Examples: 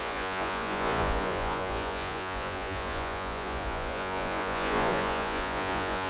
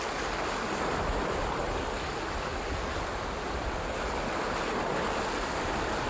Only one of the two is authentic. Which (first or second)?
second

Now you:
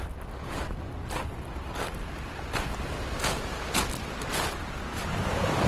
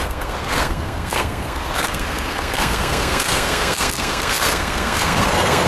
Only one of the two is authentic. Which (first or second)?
first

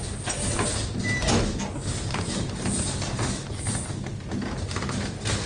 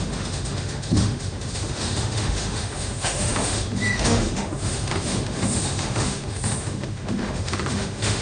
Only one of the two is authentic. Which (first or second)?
first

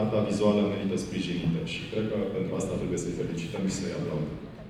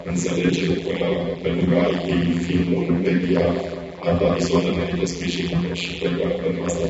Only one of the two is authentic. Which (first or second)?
first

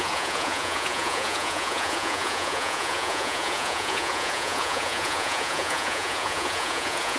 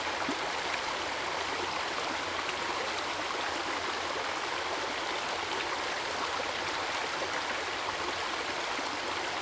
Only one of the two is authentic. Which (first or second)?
second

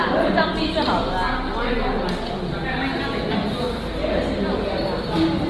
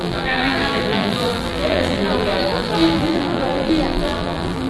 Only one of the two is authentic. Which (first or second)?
first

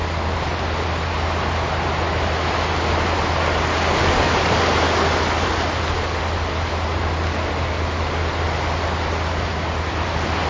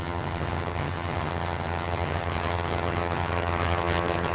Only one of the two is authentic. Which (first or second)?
first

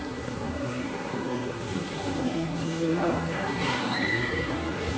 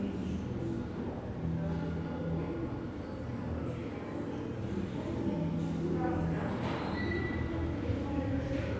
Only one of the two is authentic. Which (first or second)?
second